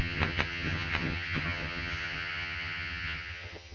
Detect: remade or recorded remade